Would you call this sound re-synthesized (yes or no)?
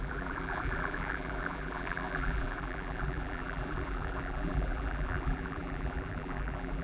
yes